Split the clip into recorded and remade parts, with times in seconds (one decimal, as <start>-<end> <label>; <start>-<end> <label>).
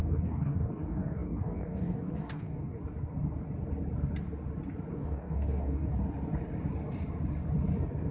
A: 0.0-2.8 remade; 2.8-4.9 recorded; 4.9-5.9 remade; 5.9-8.1 recorded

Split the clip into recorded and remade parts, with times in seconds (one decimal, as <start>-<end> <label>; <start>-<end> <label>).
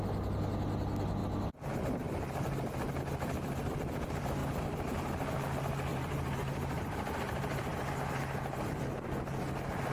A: 0.0-5.9 recorded; 5.9-7.9 remade; 7.9-9.9 recorded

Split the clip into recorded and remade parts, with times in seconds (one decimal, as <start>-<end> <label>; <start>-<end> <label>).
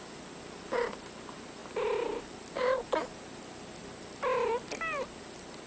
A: 0.0-5.7 recorded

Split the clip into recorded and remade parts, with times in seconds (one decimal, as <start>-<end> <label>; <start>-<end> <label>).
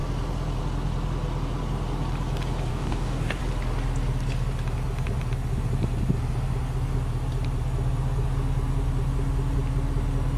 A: 0.0-2.7 recorded; 2.7-3.4 remade; 3.4-10.4 recorded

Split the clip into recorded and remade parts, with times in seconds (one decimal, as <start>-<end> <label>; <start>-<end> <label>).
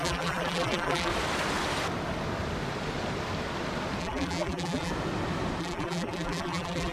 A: 0.0-1.1 remade; 1.1-4.0 recorded; 4.0-4.9 remade; 4.9-5.6 recorded; 5.6-6.9 remade